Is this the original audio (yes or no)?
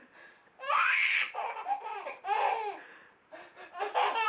yes